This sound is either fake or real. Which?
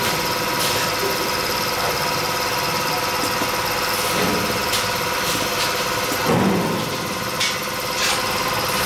real